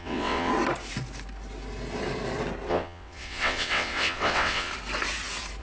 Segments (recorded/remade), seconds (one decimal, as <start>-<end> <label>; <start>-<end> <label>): 0.0-0.5 remade; 0.5-2.7 recorded; 2.7-4.7 remade; 4.7-5.6 recorded